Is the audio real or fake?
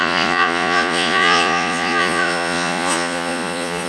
fake